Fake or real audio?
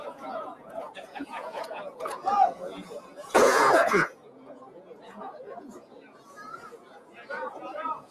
fake